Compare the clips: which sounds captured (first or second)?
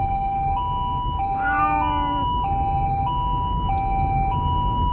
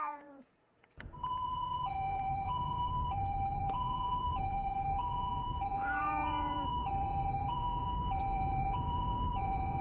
first